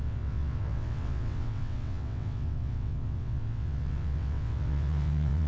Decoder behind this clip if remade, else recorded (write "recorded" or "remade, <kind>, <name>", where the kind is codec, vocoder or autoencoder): remade, vocoder, WaveNeXt